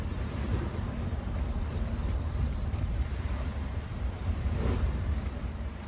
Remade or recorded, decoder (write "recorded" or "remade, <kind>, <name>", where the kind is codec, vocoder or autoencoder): remade, vocoder, BigVGAN v2